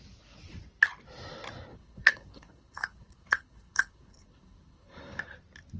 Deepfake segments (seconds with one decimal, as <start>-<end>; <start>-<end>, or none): 1.7-5.2